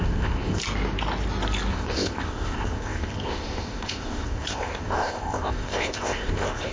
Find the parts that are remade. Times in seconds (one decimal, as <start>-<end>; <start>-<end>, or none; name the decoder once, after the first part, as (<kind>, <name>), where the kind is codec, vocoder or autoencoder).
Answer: 0.0-0.6 (codec, ZipCodec); 1.7-6.7